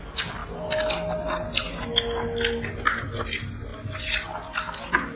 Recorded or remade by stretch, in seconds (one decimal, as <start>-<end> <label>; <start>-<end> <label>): 0.0-5.2 recorded